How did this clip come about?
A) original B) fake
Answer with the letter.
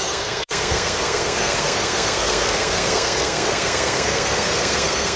B